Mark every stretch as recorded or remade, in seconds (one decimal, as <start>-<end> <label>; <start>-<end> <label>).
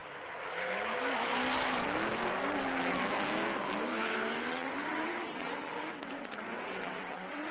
0.0-4.5 recorded; 4.5-7.5 remade